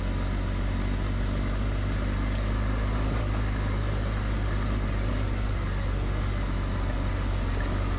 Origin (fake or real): real